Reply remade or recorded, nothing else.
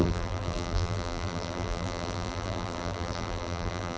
remade